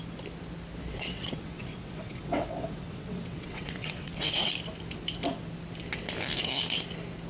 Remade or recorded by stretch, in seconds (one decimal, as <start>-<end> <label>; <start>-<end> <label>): 0.0-0.9 recorded; 0.9-4.5 remade; 4.5-7.3 recorded